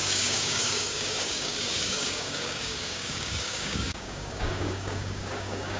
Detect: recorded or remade remade